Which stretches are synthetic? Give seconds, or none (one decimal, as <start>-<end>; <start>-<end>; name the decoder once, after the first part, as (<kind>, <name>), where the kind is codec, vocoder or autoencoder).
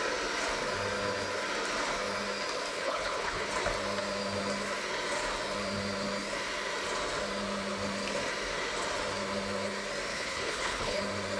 2.7-3.5 (codec, HILCodec); 10.1-11.0